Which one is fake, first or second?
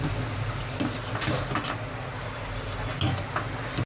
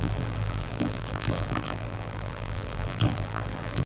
second